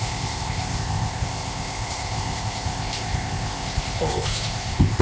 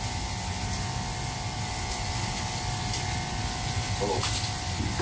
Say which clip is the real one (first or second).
second